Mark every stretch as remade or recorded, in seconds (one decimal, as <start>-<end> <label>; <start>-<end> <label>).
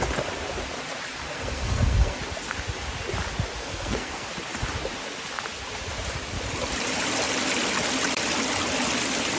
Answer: 0.0-1.3 recorded; 1.3-2.2 remade; 2.2-3.6 recorded; 3.6-4.3 remade; 4.3-9.4 recorded